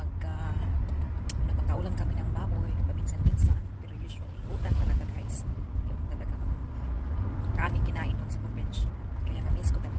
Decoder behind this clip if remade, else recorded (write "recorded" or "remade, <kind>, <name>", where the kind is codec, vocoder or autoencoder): recorded